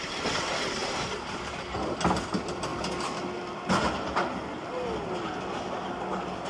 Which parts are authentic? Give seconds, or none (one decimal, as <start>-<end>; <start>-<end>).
0.0-6.5